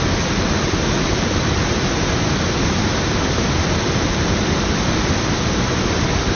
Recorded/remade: recorded